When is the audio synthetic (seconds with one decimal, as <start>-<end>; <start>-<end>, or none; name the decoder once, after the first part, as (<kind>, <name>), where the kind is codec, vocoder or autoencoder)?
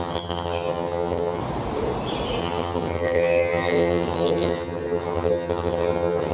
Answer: 0.0-1.4 (vocoder, HiFi-GAN); 2.4-6.3